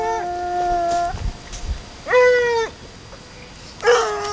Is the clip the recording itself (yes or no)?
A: yes